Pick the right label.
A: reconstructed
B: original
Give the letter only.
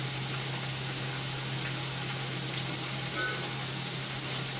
B